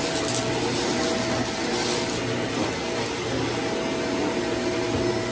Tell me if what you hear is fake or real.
real